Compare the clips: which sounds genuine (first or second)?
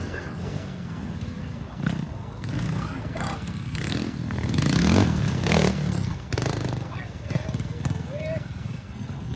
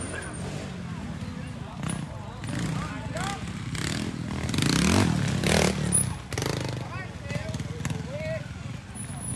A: second